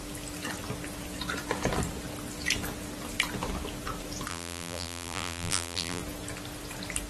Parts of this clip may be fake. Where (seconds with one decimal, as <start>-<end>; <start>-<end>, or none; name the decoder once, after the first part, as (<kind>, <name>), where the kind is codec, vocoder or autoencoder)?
4.3-6.0 (vocoder, BigVGAN v2)